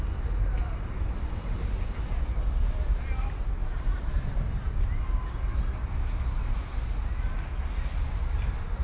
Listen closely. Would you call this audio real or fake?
real